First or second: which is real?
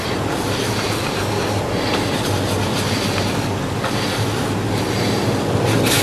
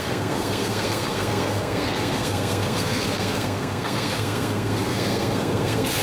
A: first